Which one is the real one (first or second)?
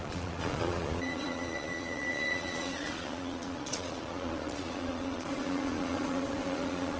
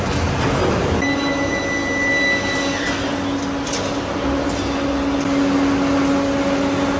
second